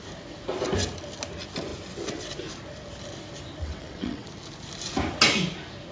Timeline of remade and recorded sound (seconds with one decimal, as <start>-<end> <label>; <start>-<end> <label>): 0.0-3.6 recorded; 3.6-4.3 remade; 4.3-5.9 recorded